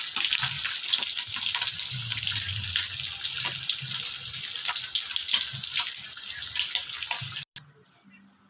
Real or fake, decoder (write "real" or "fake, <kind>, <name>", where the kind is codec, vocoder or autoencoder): real